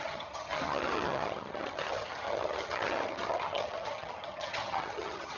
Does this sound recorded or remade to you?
remade